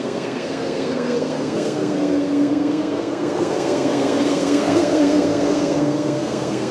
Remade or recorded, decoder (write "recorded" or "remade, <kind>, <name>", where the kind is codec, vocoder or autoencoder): remade, codec, SNAC